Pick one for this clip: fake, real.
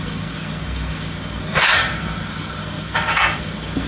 fake